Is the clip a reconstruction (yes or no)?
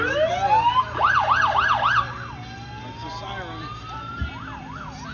no